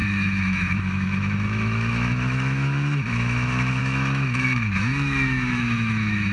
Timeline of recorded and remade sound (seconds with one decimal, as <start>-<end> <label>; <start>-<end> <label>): 0.0-6.3 remade